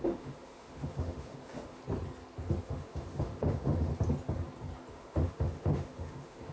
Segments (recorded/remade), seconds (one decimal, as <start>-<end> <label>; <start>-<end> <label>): 0.0-1.8 remade; 1.8-2.6 recorded; 2.6-3.9 remade; 3.9-4.9 recorded; 4.9-6.5 remade